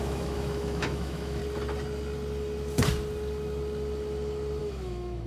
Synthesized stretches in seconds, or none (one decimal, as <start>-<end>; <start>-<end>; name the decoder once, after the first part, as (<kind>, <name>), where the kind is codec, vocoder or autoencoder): 0.0-1.4 (autoencoder, DAC-VAE); 4.6-5.3